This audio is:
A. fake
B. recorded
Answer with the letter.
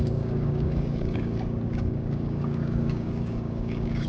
A